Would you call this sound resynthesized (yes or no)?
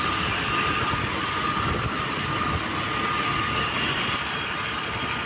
no